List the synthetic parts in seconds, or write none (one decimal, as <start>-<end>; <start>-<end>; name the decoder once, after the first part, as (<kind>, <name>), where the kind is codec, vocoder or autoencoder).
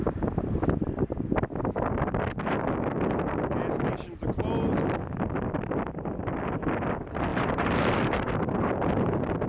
7.3-8.3 (vocoder, BigVGAN v2)